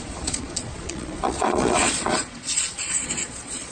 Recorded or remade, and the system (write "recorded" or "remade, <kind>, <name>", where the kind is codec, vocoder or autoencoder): remade, vocoder, Vocos